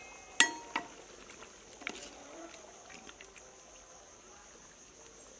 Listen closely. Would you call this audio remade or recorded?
recorded